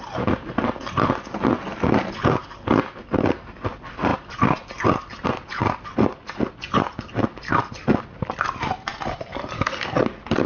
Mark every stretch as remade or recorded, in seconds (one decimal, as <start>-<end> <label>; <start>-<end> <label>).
0.0-10.5 recorded